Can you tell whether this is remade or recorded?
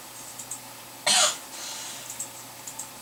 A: recorded